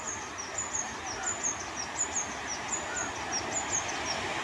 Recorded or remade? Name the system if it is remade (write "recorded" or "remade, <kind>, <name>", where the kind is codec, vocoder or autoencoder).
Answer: recorded